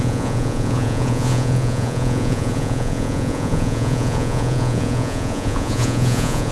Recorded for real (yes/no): no